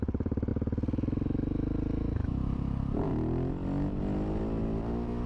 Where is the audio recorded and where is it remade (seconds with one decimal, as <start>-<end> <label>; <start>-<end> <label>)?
0.0-0.5 remade; 0.5-2.3 recorded; 2.3-3.1 remade; 3.1-5.3 recorded